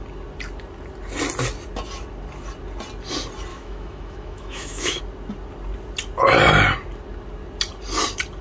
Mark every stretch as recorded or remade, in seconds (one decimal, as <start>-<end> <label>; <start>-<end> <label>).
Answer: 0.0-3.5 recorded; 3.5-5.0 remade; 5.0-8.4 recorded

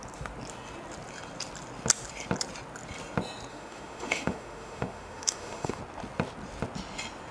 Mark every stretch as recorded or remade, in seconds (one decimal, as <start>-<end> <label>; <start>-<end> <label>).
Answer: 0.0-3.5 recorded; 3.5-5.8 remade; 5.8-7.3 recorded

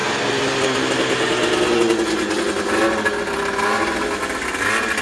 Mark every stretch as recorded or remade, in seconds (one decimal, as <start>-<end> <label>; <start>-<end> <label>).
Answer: 0.0-5.0 recorded